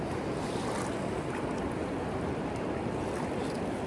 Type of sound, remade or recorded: recorded